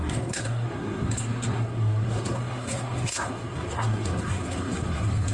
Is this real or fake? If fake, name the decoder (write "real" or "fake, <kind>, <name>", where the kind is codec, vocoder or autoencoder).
fake, codec, SNAC